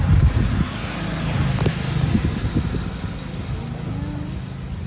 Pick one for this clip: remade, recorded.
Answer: recorded